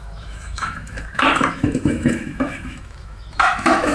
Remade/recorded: remade